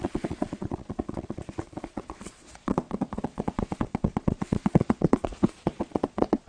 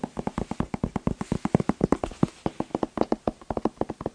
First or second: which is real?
second